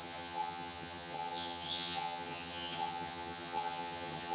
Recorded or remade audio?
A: remade